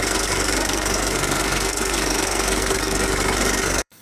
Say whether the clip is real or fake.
fake